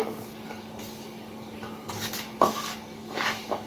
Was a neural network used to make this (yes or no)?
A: yes